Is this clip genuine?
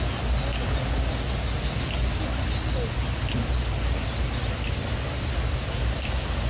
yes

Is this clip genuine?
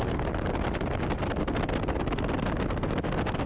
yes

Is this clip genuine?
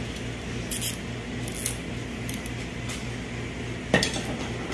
yes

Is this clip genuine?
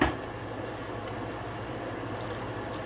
yes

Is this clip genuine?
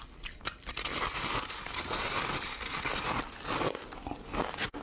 yes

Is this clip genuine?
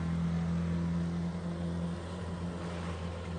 yes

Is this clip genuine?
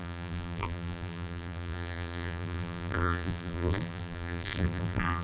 no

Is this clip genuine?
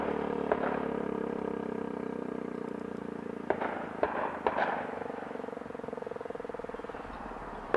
yes